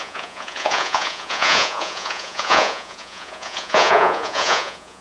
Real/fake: fake